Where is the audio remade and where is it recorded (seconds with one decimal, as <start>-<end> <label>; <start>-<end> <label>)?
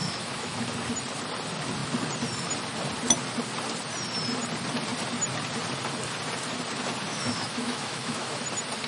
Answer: 0.0-0.6 remade; 0.6-7.1 recorded; 7.1-8.4 remade; 8.4-8.9 recorded